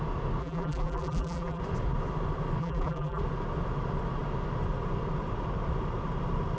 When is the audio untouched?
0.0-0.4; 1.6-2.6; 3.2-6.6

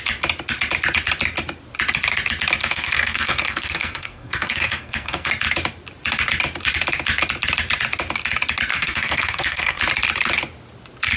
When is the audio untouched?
0.0-2.6; 5.3-8.7; 9.8-11.2